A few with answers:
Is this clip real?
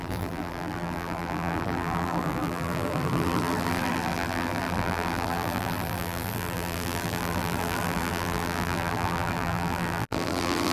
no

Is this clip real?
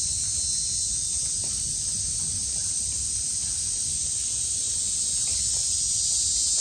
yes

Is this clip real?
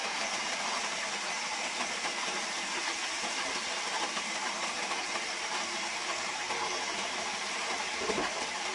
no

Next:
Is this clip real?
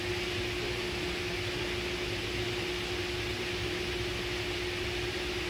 yes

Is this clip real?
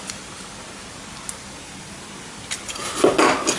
yes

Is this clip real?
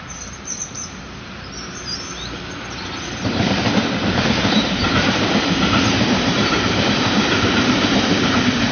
no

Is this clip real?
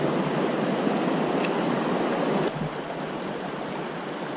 yes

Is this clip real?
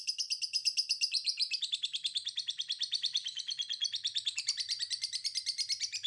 no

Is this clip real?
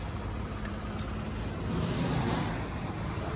no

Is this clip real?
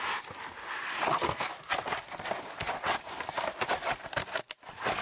yes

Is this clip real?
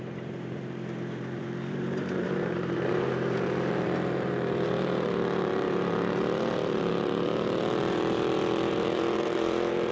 no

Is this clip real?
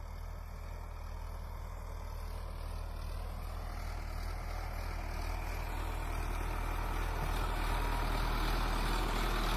yes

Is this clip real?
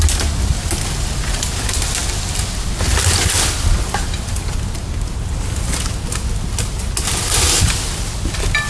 yes